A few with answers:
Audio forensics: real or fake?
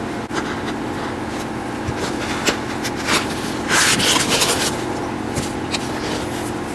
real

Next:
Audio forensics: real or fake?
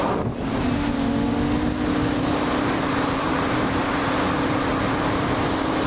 real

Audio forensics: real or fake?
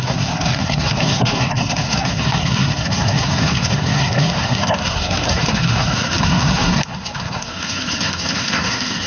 fake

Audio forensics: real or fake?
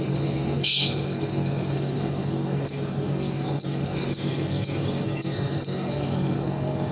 fake